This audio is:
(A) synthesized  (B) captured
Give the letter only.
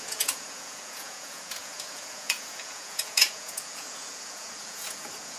A